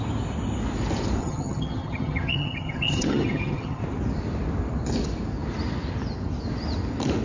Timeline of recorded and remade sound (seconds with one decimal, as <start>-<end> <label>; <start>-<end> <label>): 0.0-1.2 recorded; 1.2-3.8 remade; 3.8-7.2 recorded